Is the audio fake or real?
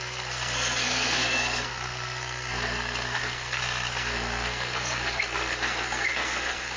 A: fake